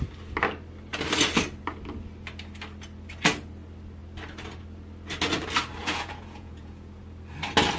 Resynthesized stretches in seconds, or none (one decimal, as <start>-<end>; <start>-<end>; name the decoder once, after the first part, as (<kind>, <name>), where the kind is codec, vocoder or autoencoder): 5.8-7.0 (vocoder, Vocos)